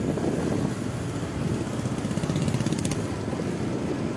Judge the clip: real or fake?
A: real